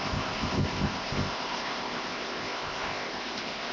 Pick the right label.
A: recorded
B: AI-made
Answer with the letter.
B